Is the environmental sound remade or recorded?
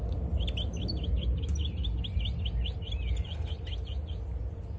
recorded